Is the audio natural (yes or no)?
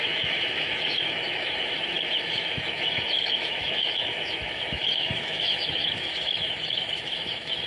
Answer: no